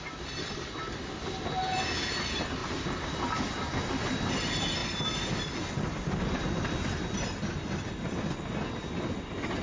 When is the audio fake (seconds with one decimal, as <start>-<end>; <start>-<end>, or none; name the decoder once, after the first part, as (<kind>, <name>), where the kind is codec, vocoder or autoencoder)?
none